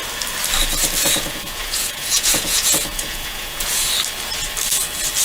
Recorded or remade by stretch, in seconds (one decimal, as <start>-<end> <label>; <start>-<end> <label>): 0.0-1.0 recorded; 1.0-3.9 remade; 3.9-5.2 recorded